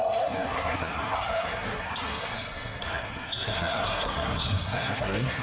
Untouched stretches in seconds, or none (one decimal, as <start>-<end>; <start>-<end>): none